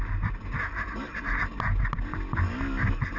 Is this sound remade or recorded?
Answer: recorded